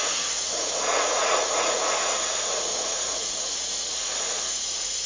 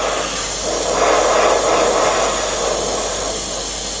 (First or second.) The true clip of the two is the second